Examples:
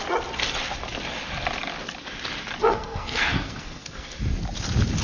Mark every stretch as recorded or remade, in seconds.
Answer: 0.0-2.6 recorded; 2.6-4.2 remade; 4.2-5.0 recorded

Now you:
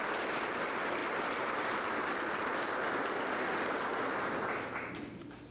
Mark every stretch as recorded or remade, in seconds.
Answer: 0.0-5.5 recorded

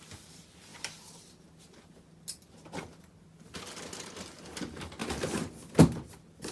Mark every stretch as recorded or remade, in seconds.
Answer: 0.0-6.5 recorded

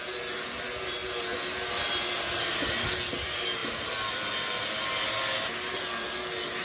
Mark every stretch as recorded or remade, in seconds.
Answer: 0.0-6.6 recorded

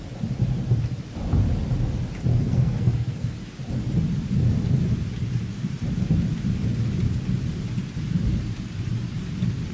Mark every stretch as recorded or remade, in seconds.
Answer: 0.0-2.3 recorded; 2.3-3.4 remade; 3.4-9.7 recorded